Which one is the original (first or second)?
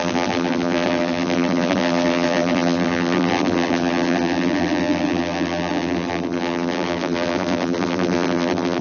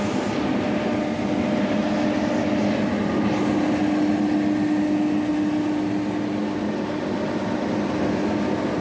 second